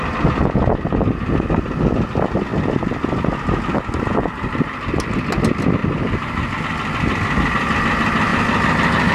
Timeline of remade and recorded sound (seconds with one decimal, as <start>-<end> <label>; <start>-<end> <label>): 0.0-5.8 recorded; 5.8-6.6 remade; 6.6-9.1 recorded